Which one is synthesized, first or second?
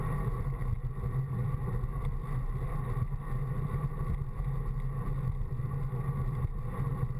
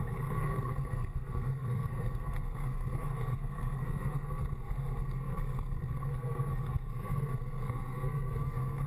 second